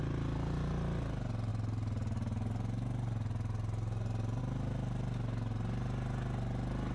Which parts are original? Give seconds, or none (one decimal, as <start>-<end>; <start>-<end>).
0.0-6.9